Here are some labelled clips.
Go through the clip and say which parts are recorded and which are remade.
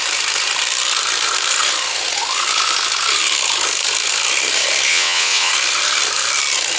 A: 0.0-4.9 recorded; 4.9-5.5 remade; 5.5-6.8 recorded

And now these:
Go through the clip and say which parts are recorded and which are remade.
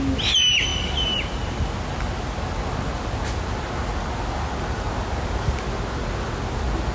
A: 0.0-6.9 recorded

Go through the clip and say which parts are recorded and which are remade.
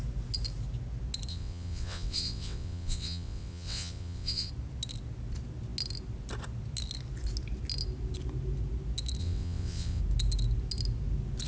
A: 0.0-1.3 recorded; 1.3-4.5 remade; 4.5-9.2 recorded; 9.2-10.0 remade; 10.0-11.5 recorded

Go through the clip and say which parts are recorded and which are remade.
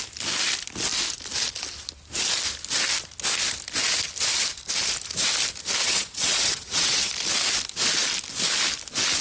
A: 0.0-5.8 recorded; 5.8-7.1 remade; 7.1-9.2 recorded